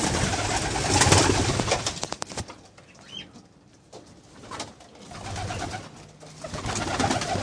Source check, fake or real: real